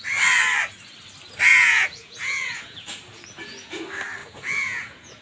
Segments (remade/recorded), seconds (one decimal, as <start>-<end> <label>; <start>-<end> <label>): 0.0-1.5 recorded; 1.5-3.8 remade; 3.8-4.2 recorded; 4.2-5.2 remade